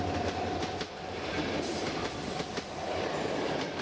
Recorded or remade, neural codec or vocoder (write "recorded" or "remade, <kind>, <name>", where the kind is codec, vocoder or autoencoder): remade, vocoder, BigVGAN v2